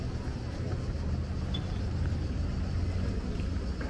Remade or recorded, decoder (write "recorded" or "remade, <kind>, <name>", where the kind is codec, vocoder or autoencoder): recorded